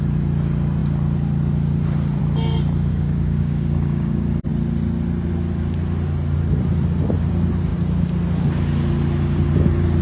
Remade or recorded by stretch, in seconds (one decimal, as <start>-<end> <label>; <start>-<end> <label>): 0.0-2.9 recorded; 2.9-4.4 remade; 4.4-10.0 recorded

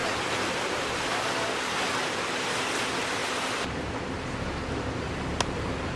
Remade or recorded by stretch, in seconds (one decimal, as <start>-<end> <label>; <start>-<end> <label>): 0.0-6.0 recorded

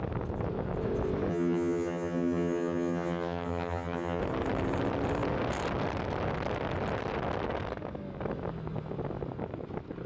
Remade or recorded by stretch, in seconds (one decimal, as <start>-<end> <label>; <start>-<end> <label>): 0.0-1.3 recorded; 1.3-4.2 remade; 4.2-10.1 recorded

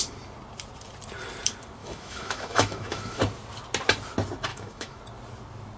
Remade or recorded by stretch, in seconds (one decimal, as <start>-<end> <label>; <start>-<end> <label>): 0.0-1.8 recorded; 1.8-3.2 remade; 3.2-4.5 recorded; 4.5-5.0 remade; 5.0-5.8 recorded

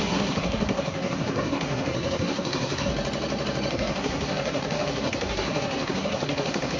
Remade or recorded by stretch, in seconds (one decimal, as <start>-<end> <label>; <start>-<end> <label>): 0.0-2.9 remade; 2.9-3.7 recorded; 3.7-6.8 remade

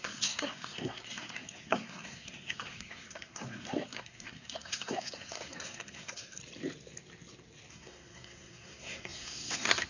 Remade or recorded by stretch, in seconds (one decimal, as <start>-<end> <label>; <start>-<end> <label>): 0.0-6.4 remade; 6.4-7.7 recorded; 7.7-9.9 remade